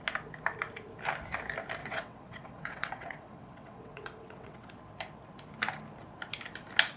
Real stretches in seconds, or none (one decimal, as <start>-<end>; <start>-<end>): 0.0-1.8; 4.7-7.0